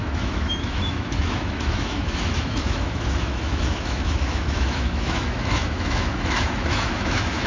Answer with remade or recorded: remade